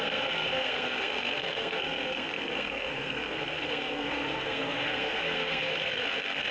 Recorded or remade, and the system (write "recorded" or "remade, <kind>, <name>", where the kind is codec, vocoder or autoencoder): remade, codec, SNAC